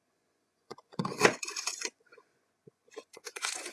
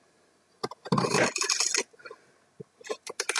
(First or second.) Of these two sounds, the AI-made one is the first